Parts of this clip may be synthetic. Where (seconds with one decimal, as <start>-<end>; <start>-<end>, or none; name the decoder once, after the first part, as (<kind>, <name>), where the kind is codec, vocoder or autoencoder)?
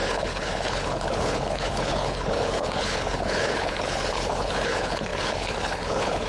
0.0-6.3 (codec, HILCodec)